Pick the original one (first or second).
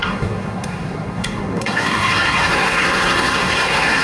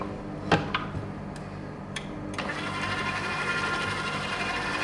second